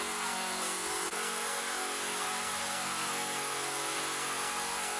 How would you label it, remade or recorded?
remade